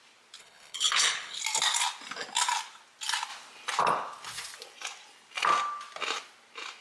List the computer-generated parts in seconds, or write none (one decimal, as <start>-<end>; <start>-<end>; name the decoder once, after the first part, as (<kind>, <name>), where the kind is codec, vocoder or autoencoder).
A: 0.4-1.4 (codec, HILCodec)